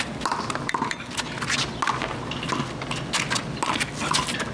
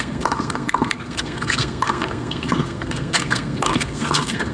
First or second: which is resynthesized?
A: second